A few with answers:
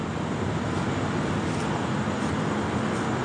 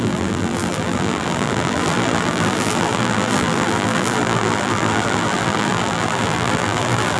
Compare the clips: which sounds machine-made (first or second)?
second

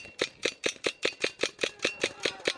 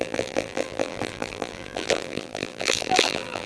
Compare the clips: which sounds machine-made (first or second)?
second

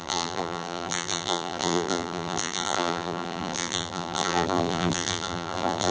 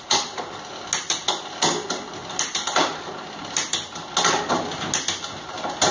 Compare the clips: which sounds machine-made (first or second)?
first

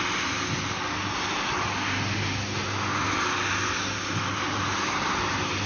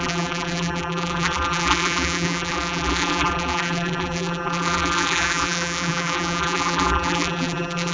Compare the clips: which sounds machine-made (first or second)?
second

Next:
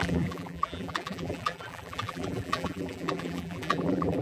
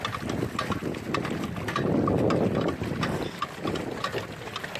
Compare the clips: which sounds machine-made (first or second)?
first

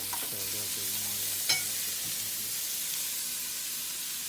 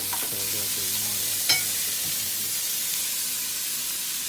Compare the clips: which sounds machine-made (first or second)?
second